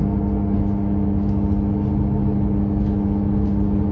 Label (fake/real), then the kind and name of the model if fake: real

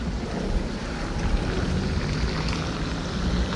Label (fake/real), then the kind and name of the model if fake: real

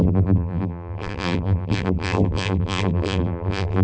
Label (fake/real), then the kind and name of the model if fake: fake, vocoder, BigVGAN v2